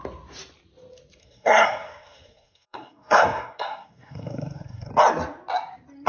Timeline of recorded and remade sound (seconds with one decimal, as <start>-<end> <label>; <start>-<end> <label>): 0.0-1.2 recorded; 1.2-4.9 remade; 4.9-6.1 recorded